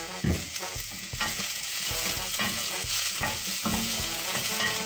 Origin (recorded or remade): remade